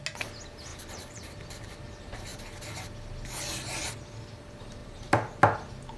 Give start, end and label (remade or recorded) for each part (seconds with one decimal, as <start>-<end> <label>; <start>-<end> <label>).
0.0-0.7 recorded; 0.7-1.7 remade; 1.7-4.8 recorded; 4.8-5.4 remade; 5.4-6.0 recorded